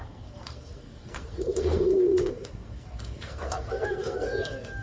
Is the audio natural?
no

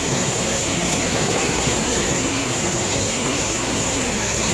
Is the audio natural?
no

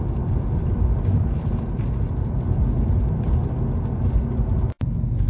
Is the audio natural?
yes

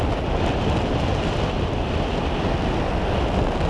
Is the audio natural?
yes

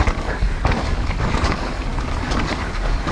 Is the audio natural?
no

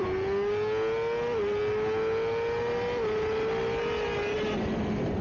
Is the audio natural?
yes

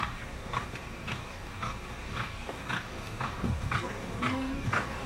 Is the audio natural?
no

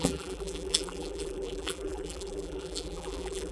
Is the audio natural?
no